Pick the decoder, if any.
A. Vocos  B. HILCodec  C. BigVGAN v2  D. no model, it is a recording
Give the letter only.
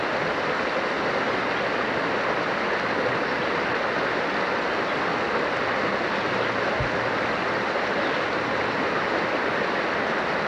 D